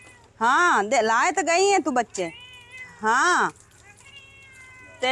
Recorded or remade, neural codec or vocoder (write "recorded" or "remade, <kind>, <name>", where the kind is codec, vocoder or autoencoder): recorded